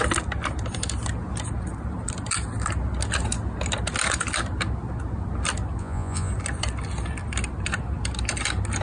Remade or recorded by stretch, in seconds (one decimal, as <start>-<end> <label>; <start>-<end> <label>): 0.0-5.8 recorded; 5.8-6.3 remade; 6.3-8.8 recorded